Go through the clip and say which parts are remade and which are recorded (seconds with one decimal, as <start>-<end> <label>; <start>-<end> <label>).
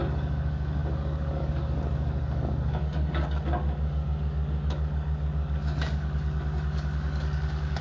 0.0-7.8 remade